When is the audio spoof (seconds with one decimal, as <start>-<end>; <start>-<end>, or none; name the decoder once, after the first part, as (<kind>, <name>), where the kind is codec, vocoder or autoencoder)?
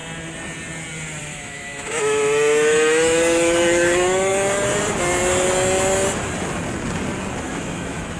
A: 1.2-4.3 (autoencoder, DAC-VAE); 7.4-8.2